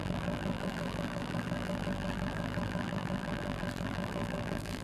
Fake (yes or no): yes